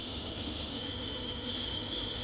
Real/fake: fake